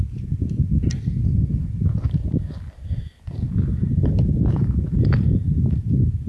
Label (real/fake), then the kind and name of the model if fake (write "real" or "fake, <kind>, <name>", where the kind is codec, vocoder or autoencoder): real